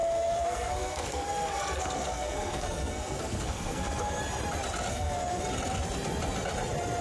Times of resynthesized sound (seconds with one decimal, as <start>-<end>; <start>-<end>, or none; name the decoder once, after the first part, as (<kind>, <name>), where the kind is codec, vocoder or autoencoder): 0.0-4.2 (codec, SNAC); 4.9-5.4

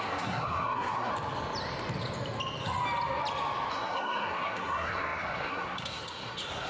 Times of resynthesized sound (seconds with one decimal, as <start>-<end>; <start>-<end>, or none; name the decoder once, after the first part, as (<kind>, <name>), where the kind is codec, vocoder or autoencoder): 0.0-1.1 (codec, SNAC); 3.7-6.7

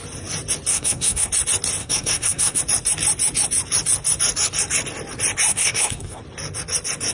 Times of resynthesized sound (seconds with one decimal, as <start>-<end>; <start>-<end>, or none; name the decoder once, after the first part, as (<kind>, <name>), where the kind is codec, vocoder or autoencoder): 0.7-1.3 (codec, SNAC); 1.8-2.6; 5.5-6.2

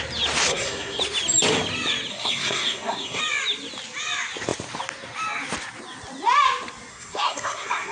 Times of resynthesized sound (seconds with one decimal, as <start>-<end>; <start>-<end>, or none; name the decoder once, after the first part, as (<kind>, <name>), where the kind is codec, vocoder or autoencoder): 0.5-1.0 (codec, SNAC); 2.1-3.2; 6.9-7.9

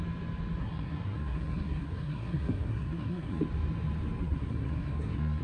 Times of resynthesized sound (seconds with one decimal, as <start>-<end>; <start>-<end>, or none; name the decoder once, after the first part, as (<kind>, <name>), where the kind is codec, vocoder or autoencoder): 0.6-3.4 (codec, SNAC); 4.2-5.4